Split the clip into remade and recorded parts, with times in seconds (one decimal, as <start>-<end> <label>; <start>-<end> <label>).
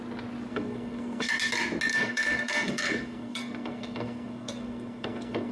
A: 0.0-0.5 recorded; 0.5-1.3 remade; 1.3-1.9 recorded; 1.9-5.5 remade